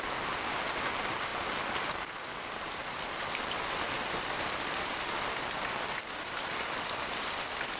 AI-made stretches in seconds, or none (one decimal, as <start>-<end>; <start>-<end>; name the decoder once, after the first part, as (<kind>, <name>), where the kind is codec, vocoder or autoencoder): none